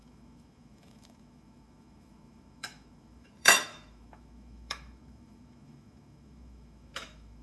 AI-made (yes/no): yes